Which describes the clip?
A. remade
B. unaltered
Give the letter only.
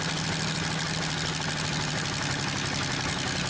B